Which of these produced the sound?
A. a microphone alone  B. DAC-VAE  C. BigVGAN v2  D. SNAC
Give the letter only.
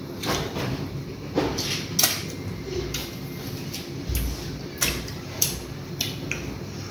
A